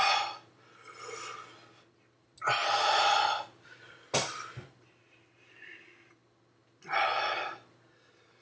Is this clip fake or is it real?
real